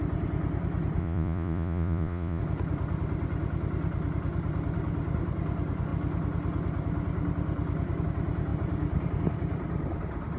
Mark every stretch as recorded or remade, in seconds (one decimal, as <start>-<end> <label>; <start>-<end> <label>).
0.0-1.0 recorded; 1.0-2.4 remade; 2.4-10.4 recorded